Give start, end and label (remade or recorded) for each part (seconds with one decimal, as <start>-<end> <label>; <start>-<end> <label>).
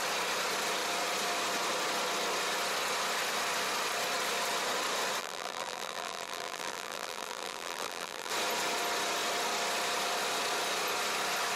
0.0-5.2 recorded; 5.2-8.3 remade; 8.3-11.6 recorded